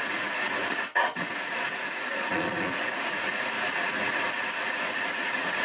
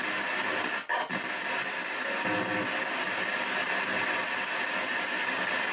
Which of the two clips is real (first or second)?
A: second